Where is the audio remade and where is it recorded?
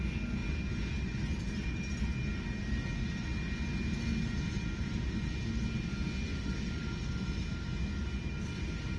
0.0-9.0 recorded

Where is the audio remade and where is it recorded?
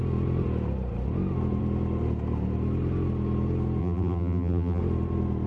0.0-3.8 recorded; 3.8-4.8 remade; 4.8-5.5 recorded